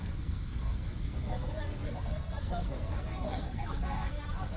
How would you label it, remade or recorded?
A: remade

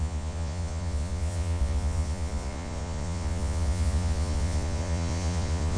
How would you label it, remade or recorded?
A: remade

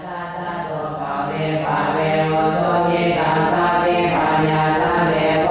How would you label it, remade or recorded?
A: recorded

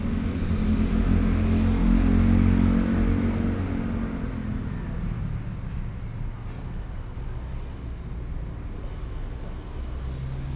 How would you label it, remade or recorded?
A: recorded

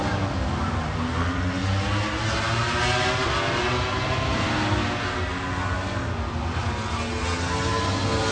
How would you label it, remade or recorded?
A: recorded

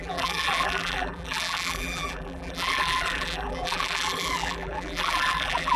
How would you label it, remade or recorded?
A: remade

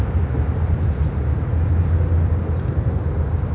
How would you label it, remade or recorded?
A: recorded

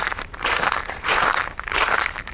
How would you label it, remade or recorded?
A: remade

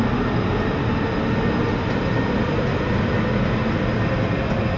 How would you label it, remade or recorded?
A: recorded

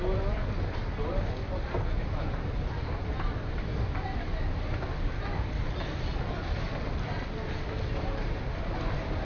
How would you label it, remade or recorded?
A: recorded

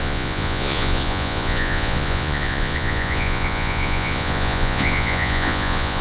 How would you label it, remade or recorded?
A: remade